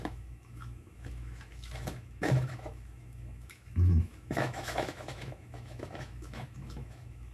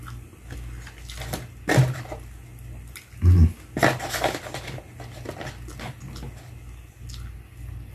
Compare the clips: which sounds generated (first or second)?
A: first